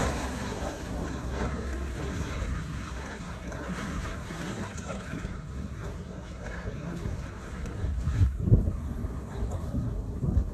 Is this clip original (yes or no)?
no